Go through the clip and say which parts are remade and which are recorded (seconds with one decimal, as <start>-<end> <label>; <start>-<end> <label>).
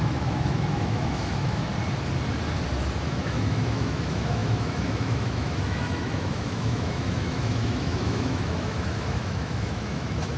0.0-1.7 remade; 1.7-3.1 recorded; 3.1-10.4 remade